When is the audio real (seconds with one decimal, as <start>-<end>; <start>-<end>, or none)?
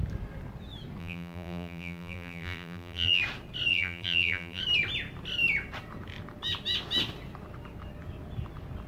0.0-1.0; 3.2-3.7; 4.6-8.9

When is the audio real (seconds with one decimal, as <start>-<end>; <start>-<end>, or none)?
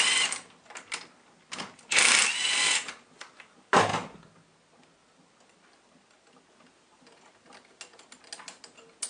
0.0-9.1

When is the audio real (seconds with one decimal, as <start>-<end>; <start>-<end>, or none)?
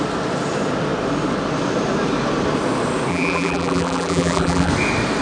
0.0-3.1; 4.7-5.2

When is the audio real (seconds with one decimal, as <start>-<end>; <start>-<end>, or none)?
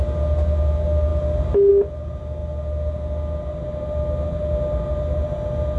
0.0-5.8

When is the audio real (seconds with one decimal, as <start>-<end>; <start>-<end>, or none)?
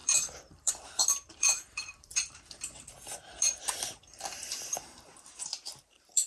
none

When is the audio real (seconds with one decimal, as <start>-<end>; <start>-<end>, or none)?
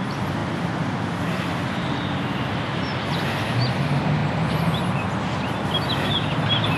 0.0-6.8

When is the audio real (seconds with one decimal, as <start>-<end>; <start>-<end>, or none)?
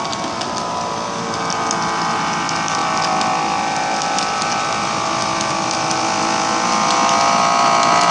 0.0-8.1